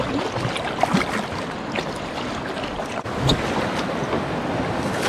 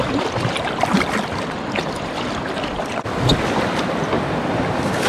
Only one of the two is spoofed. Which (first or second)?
second